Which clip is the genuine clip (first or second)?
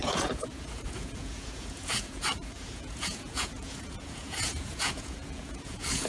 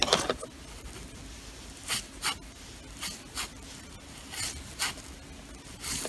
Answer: second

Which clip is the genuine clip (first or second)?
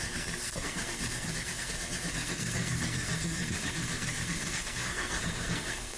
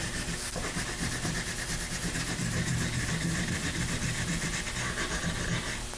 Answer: second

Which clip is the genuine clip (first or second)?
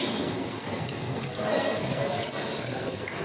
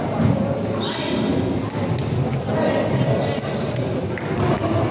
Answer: second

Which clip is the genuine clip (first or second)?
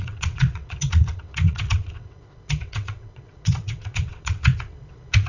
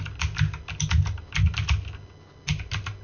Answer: second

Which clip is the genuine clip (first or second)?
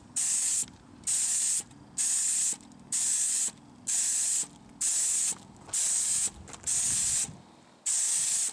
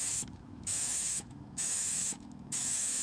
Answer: first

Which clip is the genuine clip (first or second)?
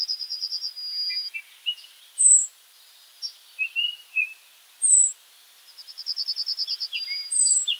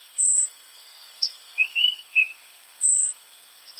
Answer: first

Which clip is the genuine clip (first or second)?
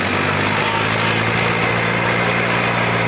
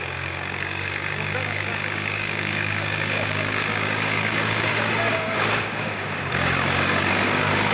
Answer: first